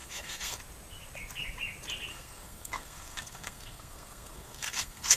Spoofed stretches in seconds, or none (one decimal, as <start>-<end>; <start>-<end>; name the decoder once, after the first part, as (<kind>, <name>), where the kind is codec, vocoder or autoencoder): 0.0-0.6 (codec, SNAC); 2.1-5.2